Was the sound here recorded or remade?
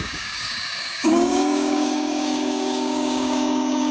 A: remade